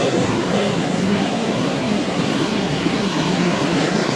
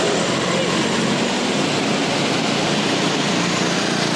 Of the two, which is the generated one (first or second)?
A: first